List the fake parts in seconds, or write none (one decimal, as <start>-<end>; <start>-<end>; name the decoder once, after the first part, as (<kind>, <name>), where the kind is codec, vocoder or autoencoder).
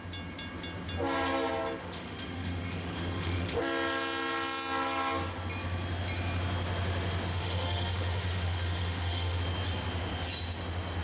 1.8-3.6 (autoencoder, DAC-VAE); 7.3-9.4